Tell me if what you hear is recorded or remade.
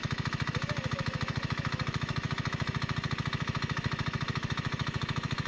remade